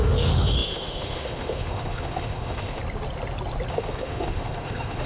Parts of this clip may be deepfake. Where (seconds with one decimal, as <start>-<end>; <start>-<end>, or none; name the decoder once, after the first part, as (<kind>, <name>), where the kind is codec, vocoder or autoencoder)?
0.0-2.8 (autoencoder, DAC-VAE); 3.7-5.1